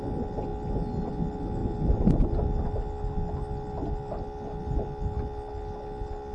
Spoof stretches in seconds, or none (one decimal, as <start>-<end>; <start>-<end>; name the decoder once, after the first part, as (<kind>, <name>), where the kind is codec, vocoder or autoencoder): none